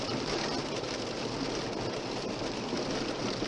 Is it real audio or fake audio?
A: real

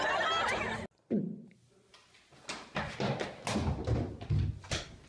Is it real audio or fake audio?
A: real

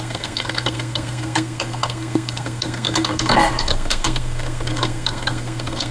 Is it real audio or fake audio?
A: fake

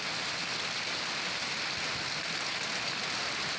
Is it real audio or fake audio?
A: real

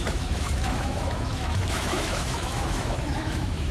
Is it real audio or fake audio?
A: fake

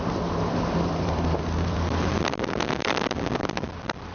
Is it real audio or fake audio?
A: fake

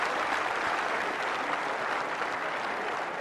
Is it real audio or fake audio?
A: real